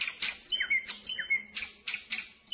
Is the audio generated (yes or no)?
no